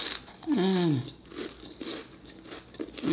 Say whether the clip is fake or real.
real